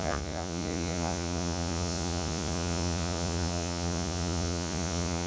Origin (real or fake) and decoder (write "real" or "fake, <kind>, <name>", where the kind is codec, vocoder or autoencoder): fake, vocoder, Vocos